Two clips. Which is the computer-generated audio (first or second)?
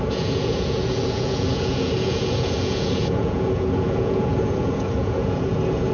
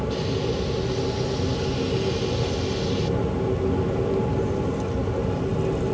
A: first